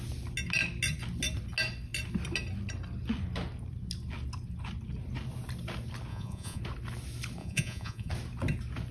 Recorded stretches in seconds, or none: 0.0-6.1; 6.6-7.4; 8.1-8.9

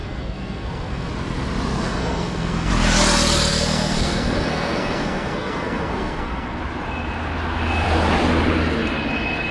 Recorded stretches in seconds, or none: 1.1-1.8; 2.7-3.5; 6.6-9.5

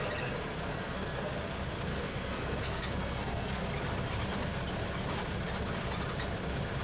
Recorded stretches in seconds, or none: 0.0-0.7; 1.3-1.9; 3.6-6.8